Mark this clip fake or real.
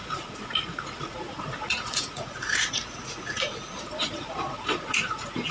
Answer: fake